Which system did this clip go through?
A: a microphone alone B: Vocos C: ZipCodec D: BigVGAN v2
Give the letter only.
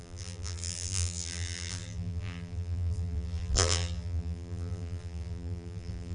D